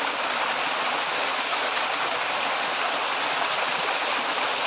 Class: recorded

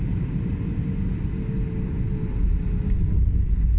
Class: recorded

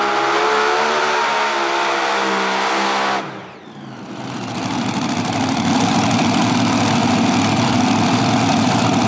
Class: recorded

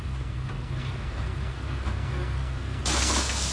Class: remade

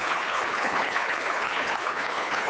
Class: remade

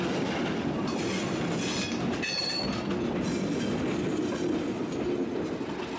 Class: recorded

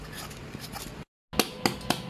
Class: recorded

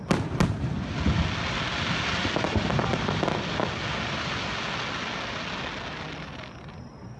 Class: recorded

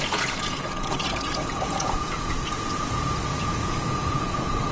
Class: remade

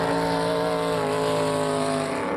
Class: recorded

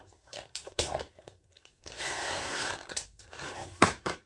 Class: remade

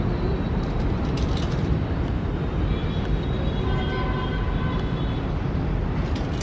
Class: recorded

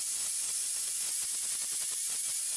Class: recorded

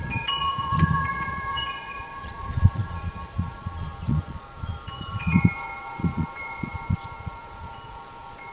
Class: remade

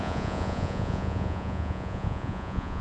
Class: remade